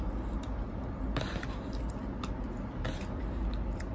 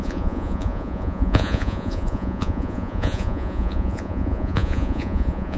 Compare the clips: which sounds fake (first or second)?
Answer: second